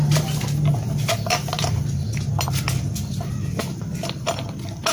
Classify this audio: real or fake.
real